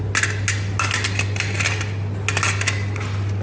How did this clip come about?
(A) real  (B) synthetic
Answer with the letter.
A